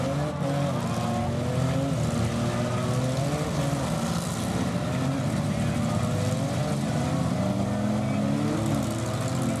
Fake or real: real